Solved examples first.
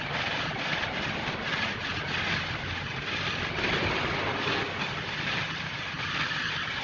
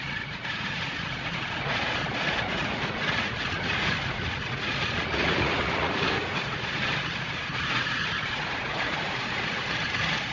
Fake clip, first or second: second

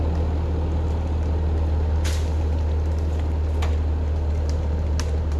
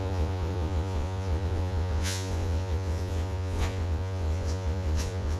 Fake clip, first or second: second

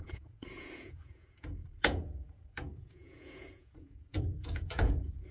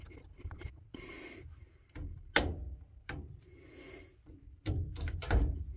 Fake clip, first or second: first